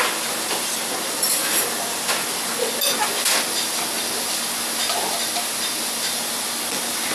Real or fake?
real